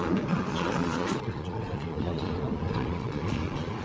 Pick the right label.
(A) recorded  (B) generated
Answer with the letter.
B